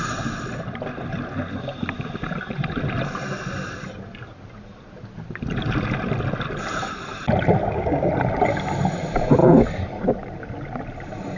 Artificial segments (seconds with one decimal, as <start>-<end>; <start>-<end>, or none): 7.6-8.1